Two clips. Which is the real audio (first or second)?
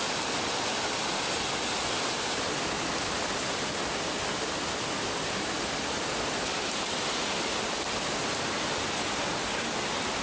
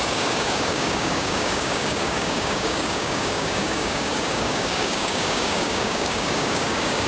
first